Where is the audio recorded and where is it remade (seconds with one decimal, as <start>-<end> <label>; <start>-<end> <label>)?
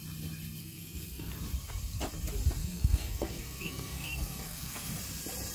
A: 0.0-0.6 recorded; 0.6-1.3 remade; 1.3-2.6 recorded; 2.6-4.9 remade; 4.9-5.5 recorded